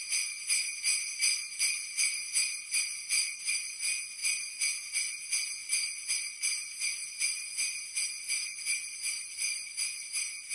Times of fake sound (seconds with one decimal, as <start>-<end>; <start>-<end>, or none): none